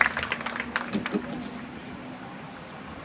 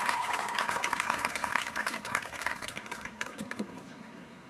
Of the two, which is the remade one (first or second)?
second